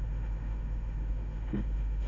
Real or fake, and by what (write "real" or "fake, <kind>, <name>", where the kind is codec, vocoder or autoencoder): fake, autoencoder, DAC-VAE